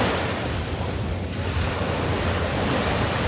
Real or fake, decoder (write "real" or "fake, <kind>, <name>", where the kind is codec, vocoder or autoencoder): fake, vocoder, BigVGAN v2